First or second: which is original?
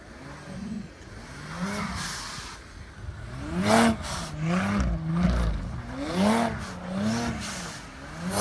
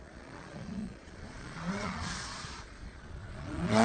first